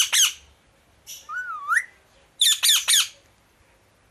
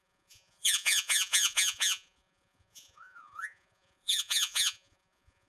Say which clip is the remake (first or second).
second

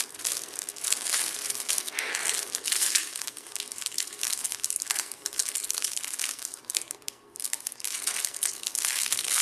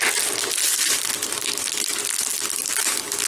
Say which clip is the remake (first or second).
first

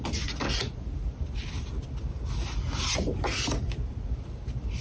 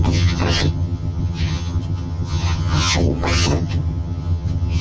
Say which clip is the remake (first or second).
second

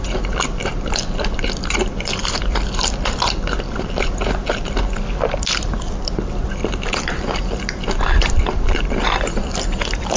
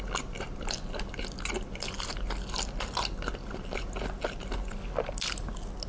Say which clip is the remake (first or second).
first